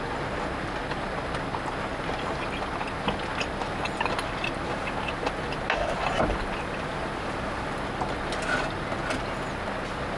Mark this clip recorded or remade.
recorded